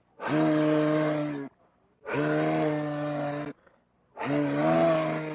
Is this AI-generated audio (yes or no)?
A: no